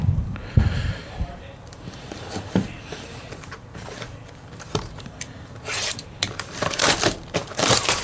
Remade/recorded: remade